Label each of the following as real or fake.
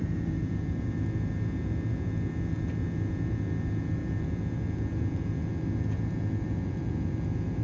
fake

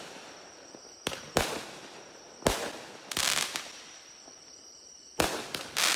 real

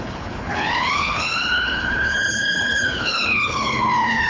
fake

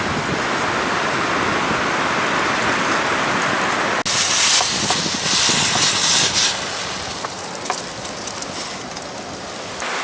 real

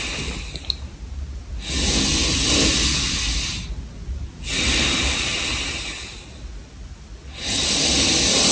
real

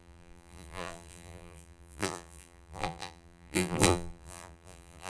fake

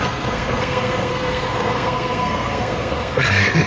fake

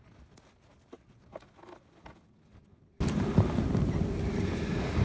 real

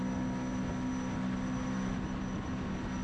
real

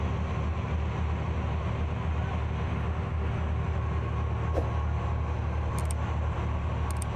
real